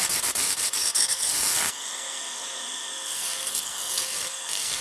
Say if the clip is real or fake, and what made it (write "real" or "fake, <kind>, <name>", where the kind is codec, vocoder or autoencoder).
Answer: fake, codec, SNAC